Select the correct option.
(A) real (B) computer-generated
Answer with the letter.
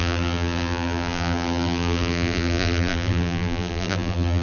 B